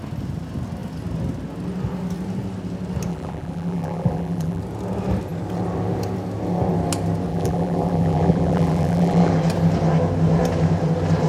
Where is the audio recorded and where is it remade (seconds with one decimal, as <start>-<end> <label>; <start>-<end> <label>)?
0.0-3.1 recorded; 3.1-4.6 remade; 4.6-7.3 recorded; 7.3-9.3 remade; 9.3-11.3 recorded

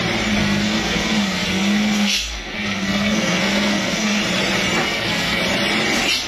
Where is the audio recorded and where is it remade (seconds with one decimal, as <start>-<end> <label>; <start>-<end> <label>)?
0.0-0.4 recorded; 0.4-4.2 remade; 4.2-4.8 recorded; 4.8-5.4 remade; 5.4-6.3 recorded

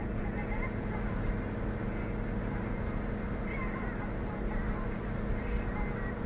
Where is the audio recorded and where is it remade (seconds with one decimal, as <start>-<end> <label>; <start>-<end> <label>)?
0.0-6.3 recorded

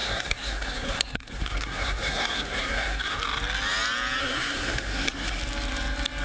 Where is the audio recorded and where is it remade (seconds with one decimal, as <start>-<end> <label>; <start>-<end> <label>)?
0.0-3.2 remade; 3.2-4.2 recorded; 4.2-5.4 remade; 5.4-6.2 recorded

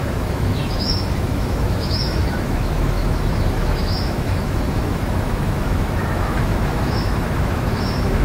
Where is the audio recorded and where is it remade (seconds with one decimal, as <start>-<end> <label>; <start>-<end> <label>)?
0.0-8.2 remade